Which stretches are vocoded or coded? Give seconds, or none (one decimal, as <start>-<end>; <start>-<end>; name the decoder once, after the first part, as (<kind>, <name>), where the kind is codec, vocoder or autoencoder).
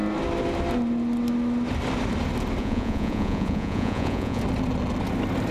2.6-4.4 (vocoder, Vocos)